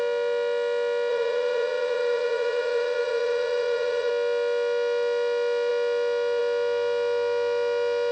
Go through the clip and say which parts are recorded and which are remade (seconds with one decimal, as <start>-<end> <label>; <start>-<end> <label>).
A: 0.0-1.1 recorded; 1.1-4.1 remade; 4.1-8.1 recorded